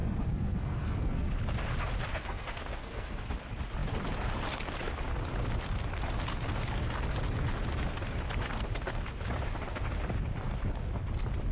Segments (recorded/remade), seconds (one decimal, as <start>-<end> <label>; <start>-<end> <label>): 0.0-1.3 remade; 1.3-2.1 recorded; 2.1-3.1 remade; 3.1-11.5 recorded